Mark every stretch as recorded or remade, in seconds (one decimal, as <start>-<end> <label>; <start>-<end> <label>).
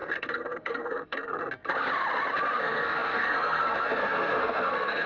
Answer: 0.0-1.4 remade; 1.4-2.6 recorded; 2.6-5.1 remade